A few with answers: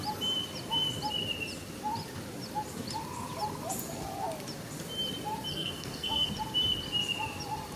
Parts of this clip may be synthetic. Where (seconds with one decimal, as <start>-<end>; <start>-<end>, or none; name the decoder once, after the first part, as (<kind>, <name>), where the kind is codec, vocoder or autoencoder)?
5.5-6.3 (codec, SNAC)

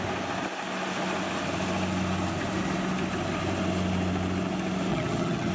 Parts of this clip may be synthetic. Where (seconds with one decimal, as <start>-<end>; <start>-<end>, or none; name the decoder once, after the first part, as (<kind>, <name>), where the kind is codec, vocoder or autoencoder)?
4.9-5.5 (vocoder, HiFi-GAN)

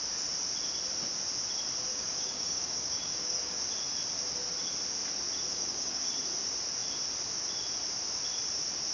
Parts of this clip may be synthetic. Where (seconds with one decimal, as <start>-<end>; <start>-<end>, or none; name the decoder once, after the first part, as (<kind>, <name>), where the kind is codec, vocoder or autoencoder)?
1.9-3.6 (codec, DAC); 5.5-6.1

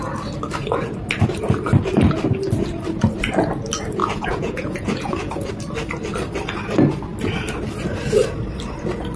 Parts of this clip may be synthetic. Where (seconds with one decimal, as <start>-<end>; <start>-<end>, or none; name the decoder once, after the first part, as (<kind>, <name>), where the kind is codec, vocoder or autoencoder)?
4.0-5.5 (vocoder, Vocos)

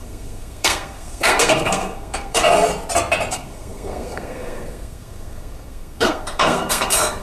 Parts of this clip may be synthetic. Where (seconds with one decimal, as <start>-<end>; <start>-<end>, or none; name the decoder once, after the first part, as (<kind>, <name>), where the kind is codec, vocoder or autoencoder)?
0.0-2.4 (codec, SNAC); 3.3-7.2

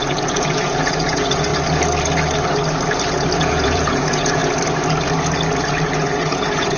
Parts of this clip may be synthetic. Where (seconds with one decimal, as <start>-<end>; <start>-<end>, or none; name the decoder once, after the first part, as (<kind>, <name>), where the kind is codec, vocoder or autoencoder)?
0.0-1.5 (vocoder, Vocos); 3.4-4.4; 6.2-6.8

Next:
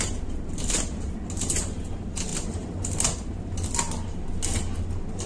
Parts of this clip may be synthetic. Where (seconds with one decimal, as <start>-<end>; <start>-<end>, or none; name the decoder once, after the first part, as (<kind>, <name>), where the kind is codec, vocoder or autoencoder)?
none